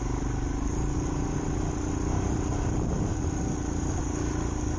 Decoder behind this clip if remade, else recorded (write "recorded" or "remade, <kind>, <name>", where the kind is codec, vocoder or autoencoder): recorded